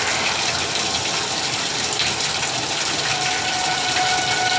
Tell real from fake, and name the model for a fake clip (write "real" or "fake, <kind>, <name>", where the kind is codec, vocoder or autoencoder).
real